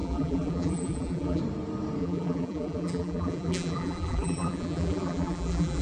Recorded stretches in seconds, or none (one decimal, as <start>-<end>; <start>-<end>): 1.4-2.0